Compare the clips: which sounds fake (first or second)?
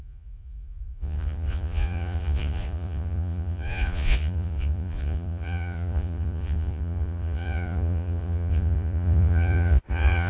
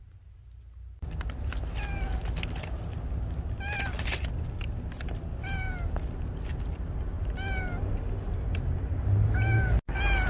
first